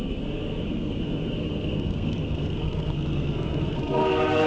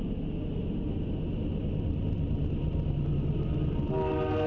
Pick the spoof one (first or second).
first